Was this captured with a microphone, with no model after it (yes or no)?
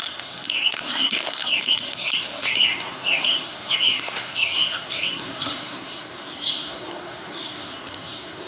no